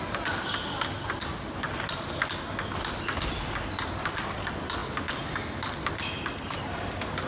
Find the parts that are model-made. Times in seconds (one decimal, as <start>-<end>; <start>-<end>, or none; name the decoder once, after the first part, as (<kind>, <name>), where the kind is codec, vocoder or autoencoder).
none